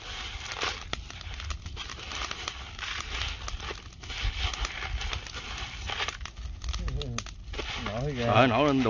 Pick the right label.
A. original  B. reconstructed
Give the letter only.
A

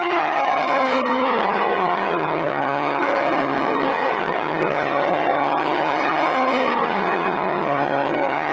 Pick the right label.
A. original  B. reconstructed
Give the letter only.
B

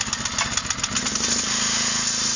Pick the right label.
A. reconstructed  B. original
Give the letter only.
B